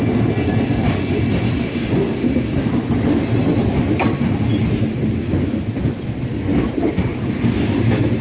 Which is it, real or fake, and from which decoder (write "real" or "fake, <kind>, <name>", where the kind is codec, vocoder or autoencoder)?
real